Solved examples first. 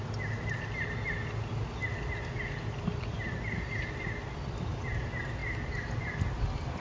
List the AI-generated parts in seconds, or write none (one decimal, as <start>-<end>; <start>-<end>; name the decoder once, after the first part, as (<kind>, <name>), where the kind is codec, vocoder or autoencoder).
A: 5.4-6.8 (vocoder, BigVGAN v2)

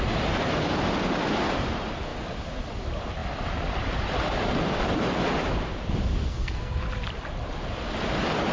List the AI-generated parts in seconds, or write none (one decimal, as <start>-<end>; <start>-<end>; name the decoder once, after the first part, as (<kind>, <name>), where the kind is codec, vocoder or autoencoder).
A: 6.2-6.8 (codec, SNAC)

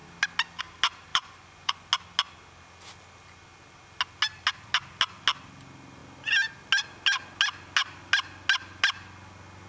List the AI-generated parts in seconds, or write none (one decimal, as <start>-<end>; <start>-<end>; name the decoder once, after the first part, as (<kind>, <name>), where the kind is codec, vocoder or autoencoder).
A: 1.1-1.9 (vocoder, Vocos)